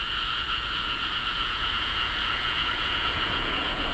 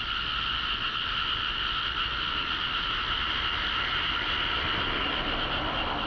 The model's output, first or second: first